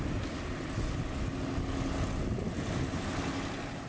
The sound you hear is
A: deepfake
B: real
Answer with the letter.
B